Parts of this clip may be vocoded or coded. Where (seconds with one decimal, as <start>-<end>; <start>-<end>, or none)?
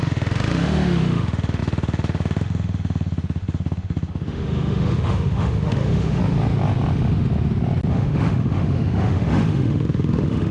0.0-6.2; 7.9-10.5